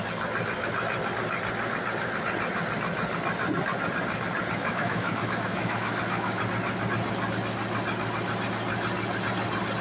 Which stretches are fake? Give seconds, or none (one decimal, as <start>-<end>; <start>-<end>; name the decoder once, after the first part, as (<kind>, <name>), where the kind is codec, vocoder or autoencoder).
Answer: 4.6-6.4 (autoencoder, DAC-VAE)